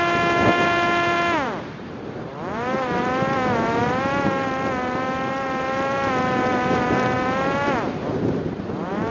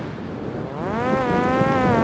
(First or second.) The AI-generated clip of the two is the first